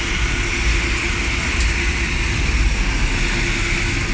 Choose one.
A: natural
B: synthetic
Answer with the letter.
A